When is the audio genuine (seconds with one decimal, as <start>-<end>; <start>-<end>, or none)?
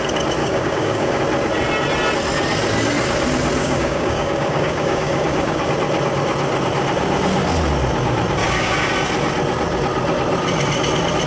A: 0.0-0.4; 1.2-3.6; 5.7-8.4; 8.9-11.3